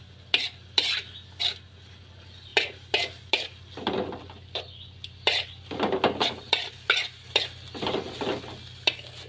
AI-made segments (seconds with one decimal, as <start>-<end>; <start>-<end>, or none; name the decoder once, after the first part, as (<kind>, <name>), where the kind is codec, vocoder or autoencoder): none